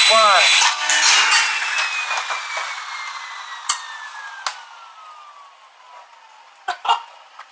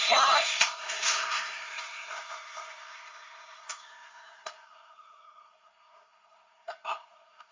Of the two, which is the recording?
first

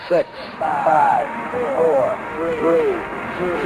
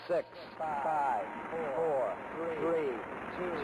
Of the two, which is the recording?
second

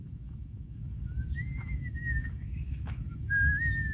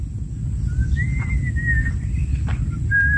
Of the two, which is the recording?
second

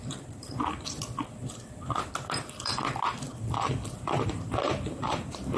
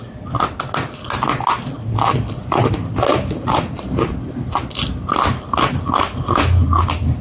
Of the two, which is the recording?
second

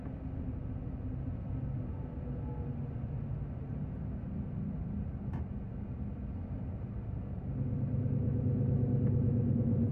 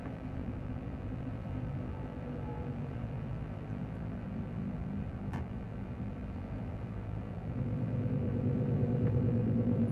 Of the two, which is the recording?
first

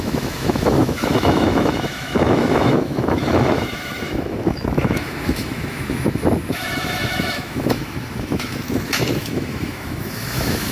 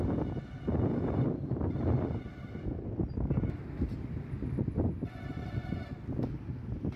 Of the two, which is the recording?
second